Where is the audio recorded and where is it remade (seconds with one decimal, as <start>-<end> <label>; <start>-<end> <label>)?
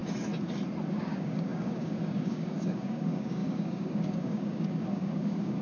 0.0-0.9 recorded; 0.9-5.6 remade